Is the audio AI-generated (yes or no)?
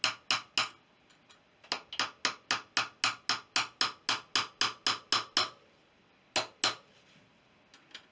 no